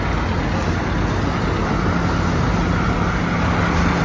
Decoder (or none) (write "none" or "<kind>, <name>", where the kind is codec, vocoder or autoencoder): none